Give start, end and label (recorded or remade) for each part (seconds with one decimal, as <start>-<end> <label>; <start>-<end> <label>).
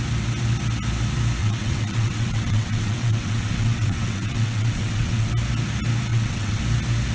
0.0-1.4 recorded; 1.4-5.3 remade; 5.3-6.1 recorded; 6.1-6.6 remade; 6.6-7.1 recorded